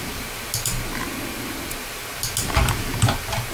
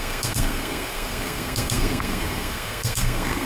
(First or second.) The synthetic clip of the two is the second